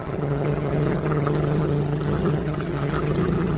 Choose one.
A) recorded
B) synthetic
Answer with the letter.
B